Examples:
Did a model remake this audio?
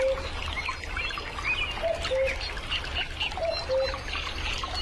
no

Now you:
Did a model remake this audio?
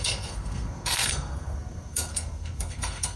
yes